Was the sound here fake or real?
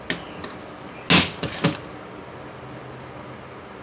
real